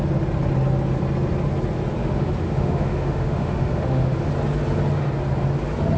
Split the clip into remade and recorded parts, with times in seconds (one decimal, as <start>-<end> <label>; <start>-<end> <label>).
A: 0.0-2.0 recorded; 2.0-4.3 remade; 4.3-6.0 recorded